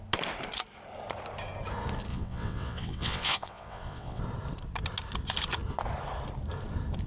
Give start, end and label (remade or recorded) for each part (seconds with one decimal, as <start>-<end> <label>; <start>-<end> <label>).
0.0-2.1 recorded; 2.1-4.2 remade; 4.2-7.1 recorded